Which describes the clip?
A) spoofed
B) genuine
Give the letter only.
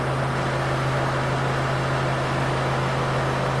B